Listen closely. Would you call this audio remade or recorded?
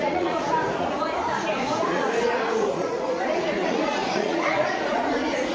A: remade